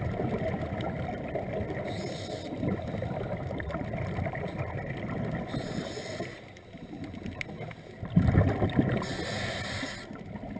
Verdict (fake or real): real